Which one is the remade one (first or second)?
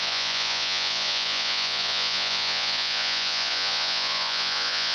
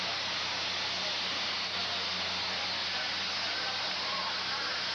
first